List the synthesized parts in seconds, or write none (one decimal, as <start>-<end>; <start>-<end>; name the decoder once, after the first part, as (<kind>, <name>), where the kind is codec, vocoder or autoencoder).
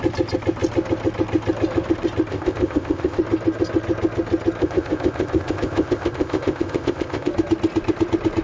2.3-3.2 (codec, ZipCodec); 4.6-7.3